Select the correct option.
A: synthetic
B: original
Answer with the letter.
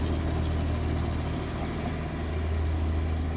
B